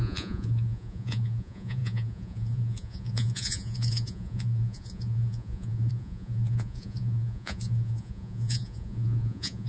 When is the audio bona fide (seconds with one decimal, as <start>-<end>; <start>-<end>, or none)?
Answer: none